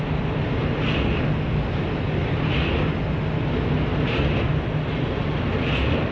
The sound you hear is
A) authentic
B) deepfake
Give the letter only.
A